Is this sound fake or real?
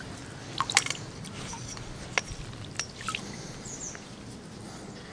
real